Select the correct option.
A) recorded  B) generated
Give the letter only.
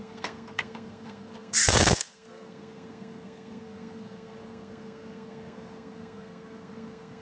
B